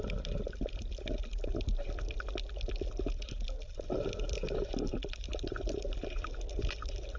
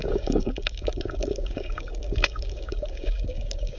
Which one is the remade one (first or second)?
second